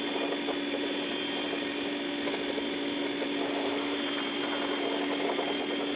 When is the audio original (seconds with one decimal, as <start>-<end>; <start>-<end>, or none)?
0.0-3.5; 4.0-6.0

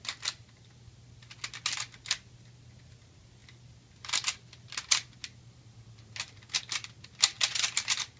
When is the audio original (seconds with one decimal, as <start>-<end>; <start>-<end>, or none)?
0.0-8.2

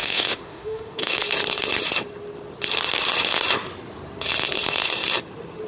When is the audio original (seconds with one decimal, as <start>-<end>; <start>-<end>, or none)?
1.1-5.7

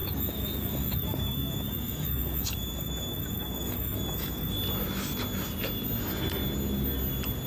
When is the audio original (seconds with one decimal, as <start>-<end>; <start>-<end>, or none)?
4.5-7.5

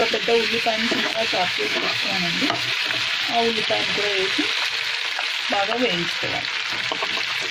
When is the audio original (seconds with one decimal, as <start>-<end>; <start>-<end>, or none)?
2.6-7.5